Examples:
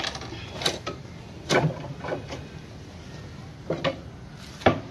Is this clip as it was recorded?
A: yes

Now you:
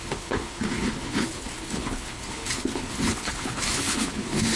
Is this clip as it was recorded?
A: no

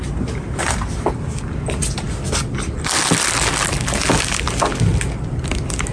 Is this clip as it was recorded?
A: yes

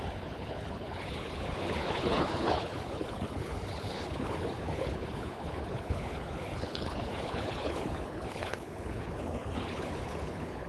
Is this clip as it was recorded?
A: no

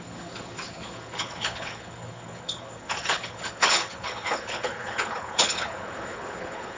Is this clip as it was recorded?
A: no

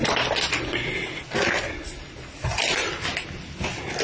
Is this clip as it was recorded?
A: yes